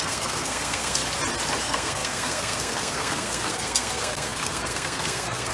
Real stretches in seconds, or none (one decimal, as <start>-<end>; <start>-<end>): 1.0-1.6